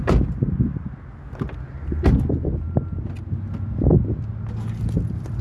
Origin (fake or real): real